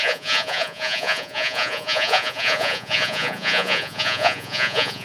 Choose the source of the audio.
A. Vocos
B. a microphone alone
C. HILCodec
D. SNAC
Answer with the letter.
A